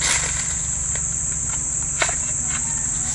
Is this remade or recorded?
recorded